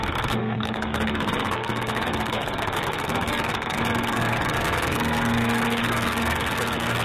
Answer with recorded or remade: remade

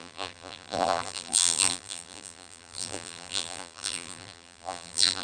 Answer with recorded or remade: remade